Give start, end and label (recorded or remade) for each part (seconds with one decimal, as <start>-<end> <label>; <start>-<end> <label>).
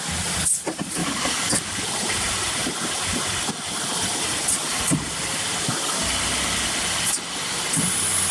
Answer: 0.0-1.0 recorded; 1.0-1.5 remade; 1.5-8.3 recorded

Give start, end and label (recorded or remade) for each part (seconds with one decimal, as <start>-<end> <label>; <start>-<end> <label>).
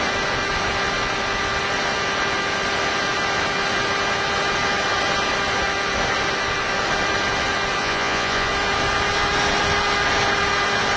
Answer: 0.0-7.8 recorded; 7.8-8.5 remade; 8.5-11.0 recorded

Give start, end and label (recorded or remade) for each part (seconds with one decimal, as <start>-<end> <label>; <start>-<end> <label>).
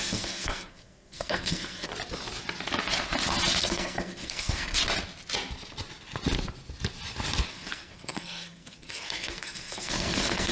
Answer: 0.0-1.9 remade; 1.9-3.6 recorded; 3.6-4.8 remade; 4.8-7.5 recorded; 7.5-10.5 remade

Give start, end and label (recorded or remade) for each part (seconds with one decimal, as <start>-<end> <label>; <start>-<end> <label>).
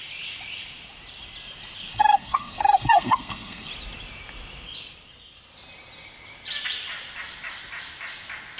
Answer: 0.0-1.9 recorded; 1.9-3.7 remade; 3.7-8.6 recorded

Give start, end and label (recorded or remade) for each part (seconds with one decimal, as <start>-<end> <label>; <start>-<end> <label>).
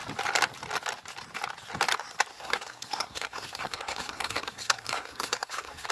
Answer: 0.0-2.3 recorded; 2.3-5.9 remade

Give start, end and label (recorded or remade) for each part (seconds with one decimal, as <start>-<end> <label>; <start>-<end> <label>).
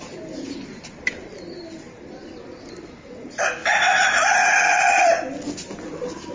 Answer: 0.0-6.3 recorded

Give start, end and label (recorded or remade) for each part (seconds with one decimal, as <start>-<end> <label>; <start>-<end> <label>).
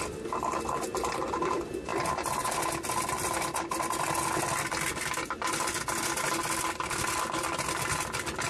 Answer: 0.0-8.5 recorded